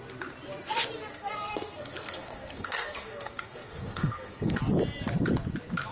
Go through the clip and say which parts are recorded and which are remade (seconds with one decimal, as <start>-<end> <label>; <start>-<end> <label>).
0.0-1.1 recorded; 1.1-4.6 remade; 4.6-5.9 recorded